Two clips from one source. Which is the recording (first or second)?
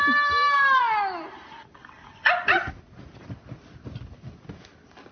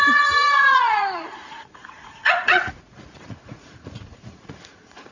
first